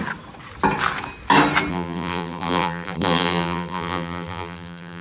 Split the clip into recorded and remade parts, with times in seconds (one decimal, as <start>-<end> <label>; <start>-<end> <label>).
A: 0.0-1.7 recorded; 1.7-5.0 remade